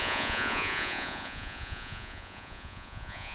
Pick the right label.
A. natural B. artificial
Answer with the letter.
B